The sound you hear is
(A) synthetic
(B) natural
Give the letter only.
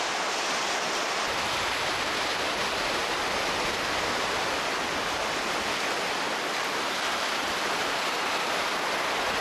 A